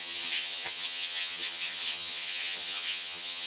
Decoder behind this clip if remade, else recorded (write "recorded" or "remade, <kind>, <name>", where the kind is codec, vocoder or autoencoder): remade, vocoder, HiFi-GAN